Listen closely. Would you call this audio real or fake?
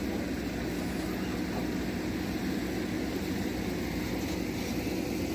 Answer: real